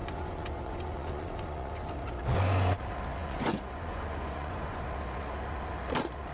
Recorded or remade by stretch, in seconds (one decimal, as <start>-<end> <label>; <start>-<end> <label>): 0.0-1.9 remade; 1.9-3.2 recorded; 3.2-4.8 remade; 4.8-6.3 recorded